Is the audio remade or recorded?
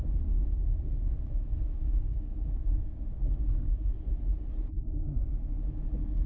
recorded